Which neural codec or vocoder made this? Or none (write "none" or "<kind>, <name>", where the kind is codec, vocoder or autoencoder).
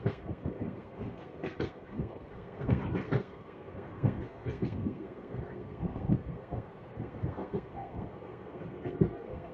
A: codec, SNAC